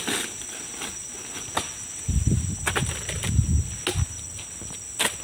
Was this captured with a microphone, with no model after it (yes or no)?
yes